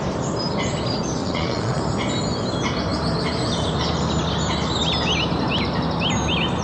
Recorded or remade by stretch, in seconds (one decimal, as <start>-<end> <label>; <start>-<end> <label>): 0.0-1.2 recorded; 1.2-1.8 remade; 1.8-6.6 recorded